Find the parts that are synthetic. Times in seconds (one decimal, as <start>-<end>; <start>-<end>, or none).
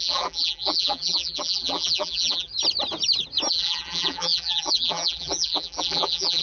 0.0-2.5; 3.5-6.4